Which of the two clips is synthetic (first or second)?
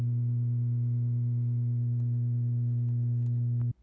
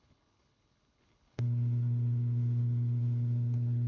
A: second